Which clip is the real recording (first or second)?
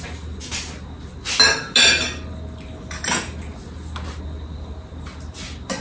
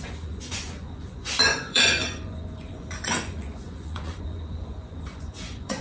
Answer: first